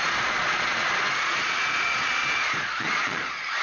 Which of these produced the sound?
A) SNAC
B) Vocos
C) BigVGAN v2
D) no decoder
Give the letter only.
B